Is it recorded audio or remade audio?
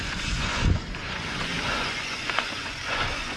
remade